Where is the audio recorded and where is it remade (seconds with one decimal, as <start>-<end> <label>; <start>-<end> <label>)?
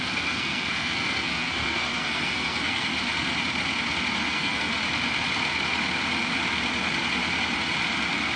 0.0-2.9 remade; 2.9-4.3 recorded; 4.3-4.7 remade; 4.7-8.4 recorded